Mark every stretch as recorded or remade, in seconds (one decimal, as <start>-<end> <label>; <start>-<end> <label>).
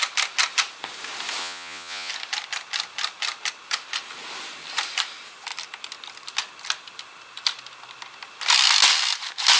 0.0-1.4 recorded; 1.4-2.1 remade; 2.1-9.6 recorded